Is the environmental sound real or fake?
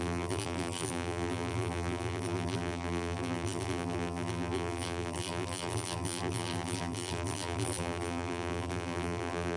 fake